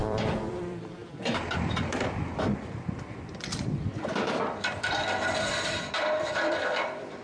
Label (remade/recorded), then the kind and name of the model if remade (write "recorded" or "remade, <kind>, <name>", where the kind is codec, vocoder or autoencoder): remade, vocoder, BigVGAN v2